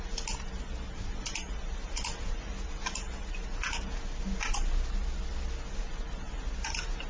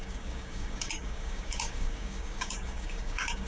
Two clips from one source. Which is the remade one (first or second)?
second